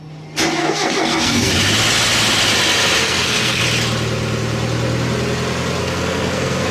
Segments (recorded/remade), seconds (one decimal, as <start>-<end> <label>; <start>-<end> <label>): 0.0-0.6 recorded; 0.6-1.5 remade; 1.5-3.0 recorded; 3.0-3.6 remade; 3.6-5.8 recorded; 5.8-6.7 remade